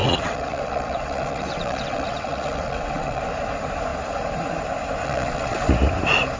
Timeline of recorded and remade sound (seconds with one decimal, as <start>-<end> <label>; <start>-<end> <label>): 0.0-3.2 remade; 3.2-5.0 recorded; 5.0-5.7 remade; 5.7-6.4 recorded